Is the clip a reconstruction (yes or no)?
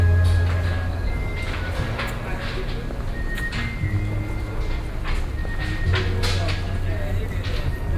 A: no